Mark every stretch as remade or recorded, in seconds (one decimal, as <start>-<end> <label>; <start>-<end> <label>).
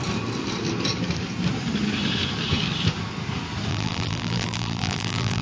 0.0-3.7 recorded; 3.7-5.4 remade